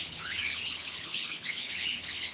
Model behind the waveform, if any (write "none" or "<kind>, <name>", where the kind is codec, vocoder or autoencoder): codec, HILCodec